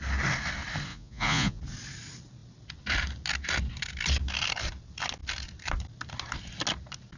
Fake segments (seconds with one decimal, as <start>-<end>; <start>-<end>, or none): 0.9-1.6